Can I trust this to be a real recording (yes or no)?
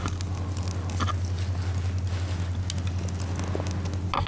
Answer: yes